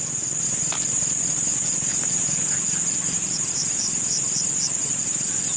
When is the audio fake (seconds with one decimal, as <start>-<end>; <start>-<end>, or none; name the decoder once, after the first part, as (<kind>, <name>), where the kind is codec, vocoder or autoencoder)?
1.9-4.2 (vocoder, Vocos)

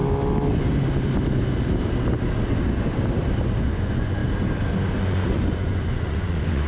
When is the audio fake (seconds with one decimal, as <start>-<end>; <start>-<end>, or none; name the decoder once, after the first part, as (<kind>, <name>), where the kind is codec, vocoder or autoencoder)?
3.6-4.2 (vocoder, Vocos); 4.9-6.7